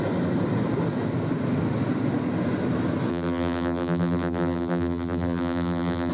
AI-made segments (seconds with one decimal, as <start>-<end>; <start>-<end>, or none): 3.1-6.1